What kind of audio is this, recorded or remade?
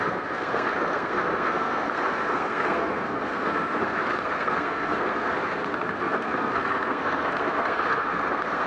remade